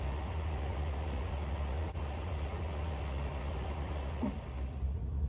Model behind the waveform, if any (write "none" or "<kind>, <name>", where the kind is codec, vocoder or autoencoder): vocoder, Vocos